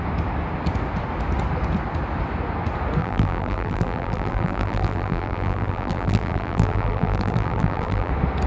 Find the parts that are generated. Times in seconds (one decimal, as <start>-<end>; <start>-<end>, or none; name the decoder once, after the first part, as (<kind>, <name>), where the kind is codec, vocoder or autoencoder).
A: 3.0-8.1 (vocoder, BigVGAN v2)